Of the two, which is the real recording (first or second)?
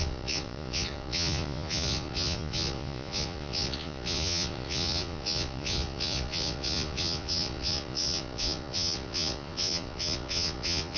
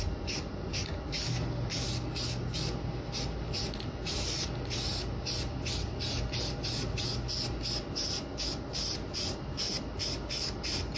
second